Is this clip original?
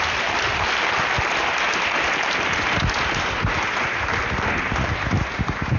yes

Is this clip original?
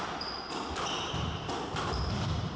yes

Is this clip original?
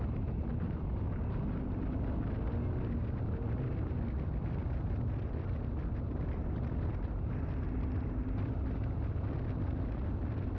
yes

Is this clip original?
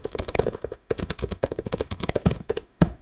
no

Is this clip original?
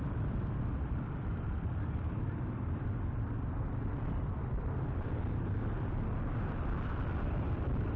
no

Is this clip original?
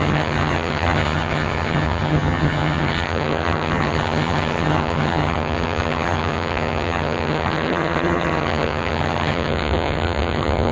no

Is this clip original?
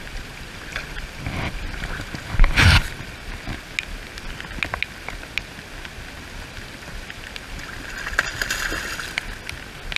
yes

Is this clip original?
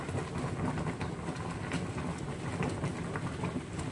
yes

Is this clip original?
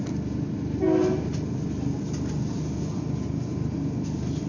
yes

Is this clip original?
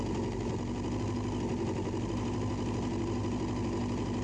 yes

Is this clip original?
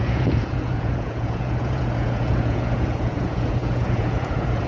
no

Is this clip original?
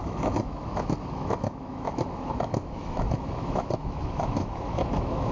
no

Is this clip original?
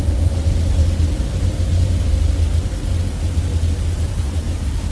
yes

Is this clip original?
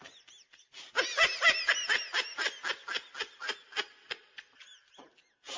yes